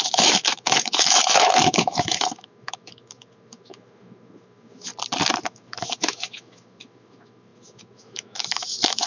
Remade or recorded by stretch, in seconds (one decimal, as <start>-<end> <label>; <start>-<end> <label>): 0.0-4.9 remade; 4.9-5.5 recorded; 5.5-9.1 remade